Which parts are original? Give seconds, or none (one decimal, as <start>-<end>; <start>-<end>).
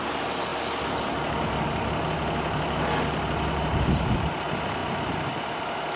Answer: 0.0-6.0